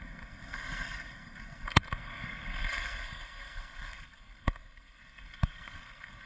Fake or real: fake